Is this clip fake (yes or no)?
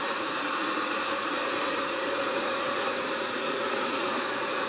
yes